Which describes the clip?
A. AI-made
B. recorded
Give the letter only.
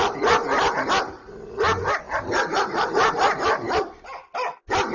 B